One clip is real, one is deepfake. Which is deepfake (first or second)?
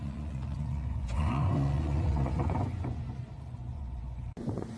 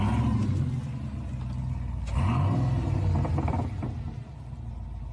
first